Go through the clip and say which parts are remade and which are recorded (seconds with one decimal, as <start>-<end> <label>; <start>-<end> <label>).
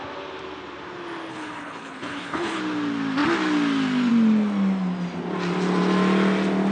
0.0-1.3 recorded; 1.3-2.6 remade; 2.6-6.7 recorded